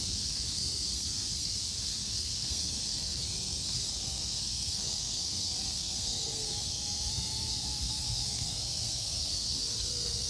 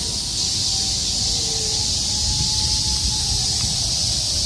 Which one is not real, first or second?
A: first